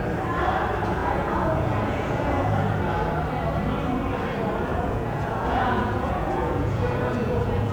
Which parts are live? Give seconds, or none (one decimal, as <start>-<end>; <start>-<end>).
0.0-1.0; 2.8-4.7